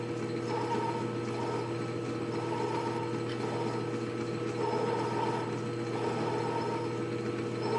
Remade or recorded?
recorded